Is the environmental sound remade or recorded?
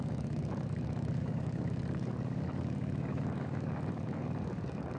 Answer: remade